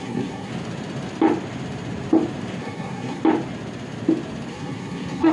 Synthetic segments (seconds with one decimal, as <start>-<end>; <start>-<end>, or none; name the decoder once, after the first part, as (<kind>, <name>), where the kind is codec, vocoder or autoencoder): 0.0-0.5 (codec, SNAC); 2.6-3.2; 4.5-5.3